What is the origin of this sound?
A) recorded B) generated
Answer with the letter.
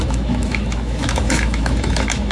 B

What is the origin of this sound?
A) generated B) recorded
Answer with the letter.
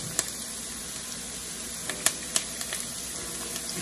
B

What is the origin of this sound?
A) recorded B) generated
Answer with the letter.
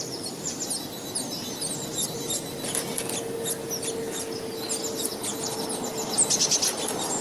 A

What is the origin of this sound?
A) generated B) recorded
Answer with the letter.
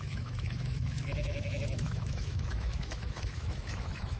A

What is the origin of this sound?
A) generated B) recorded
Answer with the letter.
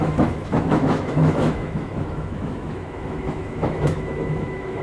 A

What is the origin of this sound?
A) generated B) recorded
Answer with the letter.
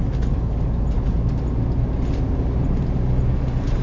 B